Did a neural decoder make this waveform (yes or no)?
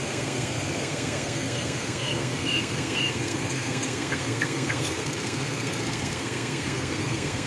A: yes